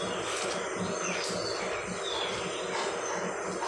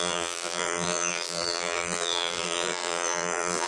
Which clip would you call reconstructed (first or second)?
second